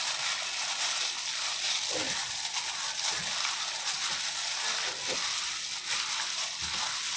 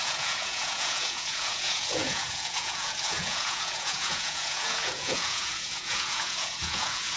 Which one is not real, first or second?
second